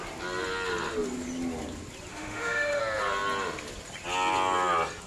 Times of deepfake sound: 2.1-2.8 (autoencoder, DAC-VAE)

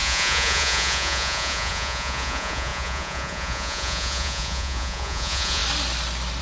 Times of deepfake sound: 0.0-5.6 (vocoder, Vocos)

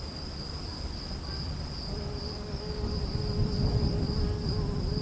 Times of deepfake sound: none

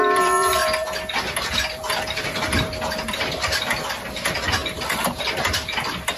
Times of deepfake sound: 0.0-0.6 (vocoder, BigVGAN v2); 1.7-6.2

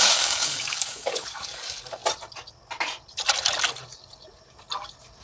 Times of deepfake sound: 0.0-2.0 (codec, DAC)

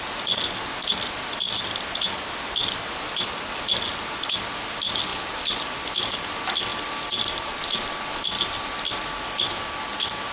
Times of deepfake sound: 6.7-10.3 (vocoder, BigVGAN v2)

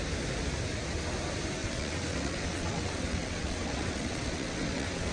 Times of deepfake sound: 1.6-5.1 (vocoder, WaveNeXt)

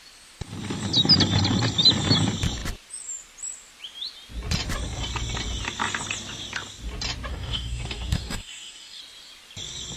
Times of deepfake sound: 7.3-9.0 (codec, DAC)